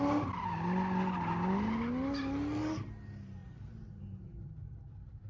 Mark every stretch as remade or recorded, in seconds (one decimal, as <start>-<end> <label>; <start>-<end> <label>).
0.0-5.3 recorded